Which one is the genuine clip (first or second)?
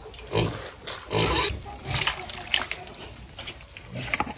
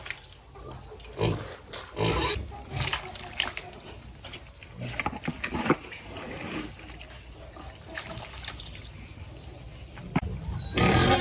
second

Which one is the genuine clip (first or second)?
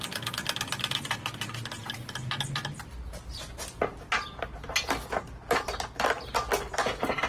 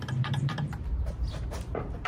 first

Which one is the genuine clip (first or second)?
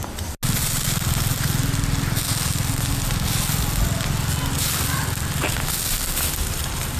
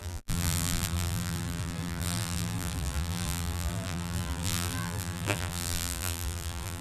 first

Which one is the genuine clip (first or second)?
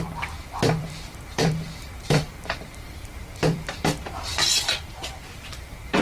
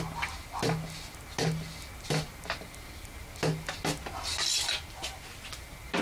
second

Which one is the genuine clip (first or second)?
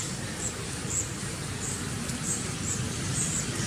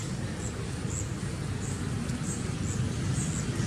second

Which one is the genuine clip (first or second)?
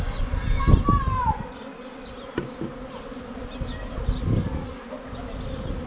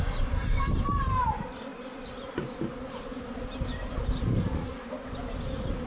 first